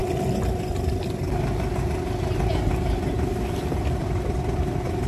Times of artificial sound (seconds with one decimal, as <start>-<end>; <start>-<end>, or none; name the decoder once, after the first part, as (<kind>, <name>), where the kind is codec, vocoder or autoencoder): 4.0-5.1 (vocoder, BigVGAN v2)